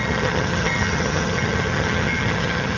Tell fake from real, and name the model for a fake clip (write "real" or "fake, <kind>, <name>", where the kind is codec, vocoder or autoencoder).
fake, vocoder, HiFi-GAN